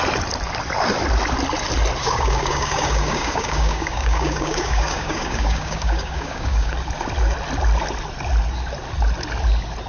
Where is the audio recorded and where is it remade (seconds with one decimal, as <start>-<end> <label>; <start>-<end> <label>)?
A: 0.0-2.0 recorded; 2.0-6.7 remade; 6.7-9.9 recorded